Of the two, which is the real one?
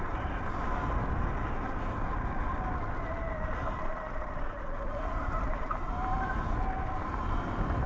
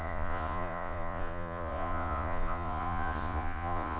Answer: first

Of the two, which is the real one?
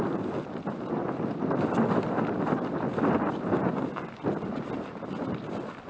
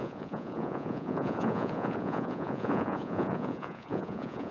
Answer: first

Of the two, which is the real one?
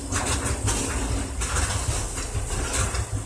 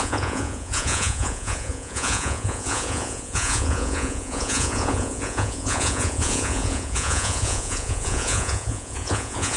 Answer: first